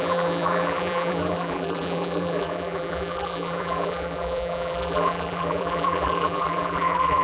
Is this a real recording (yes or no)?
no